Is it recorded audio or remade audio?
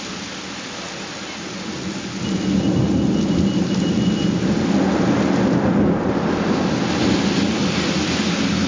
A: recorded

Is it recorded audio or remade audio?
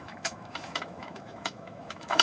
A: remade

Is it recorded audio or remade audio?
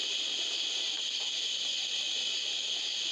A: recorded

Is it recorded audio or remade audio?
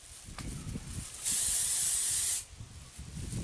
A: recorded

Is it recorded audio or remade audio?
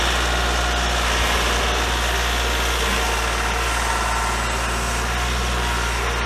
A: recorded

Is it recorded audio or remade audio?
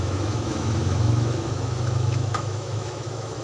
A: remade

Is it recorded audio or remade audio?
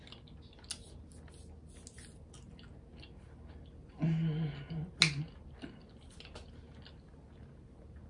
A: recorded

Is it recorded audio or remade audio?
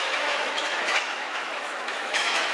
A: remade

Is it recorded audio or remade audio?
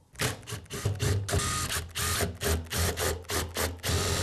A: recorded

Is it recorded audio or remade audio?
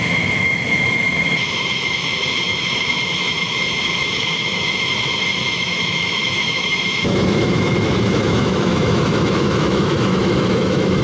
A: remade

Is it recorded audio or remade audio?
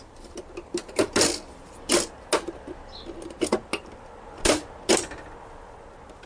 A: recorded